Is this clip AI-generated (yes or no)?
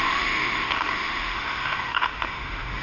yes